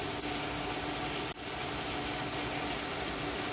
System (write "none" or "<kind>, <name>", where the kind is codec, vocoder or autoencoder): none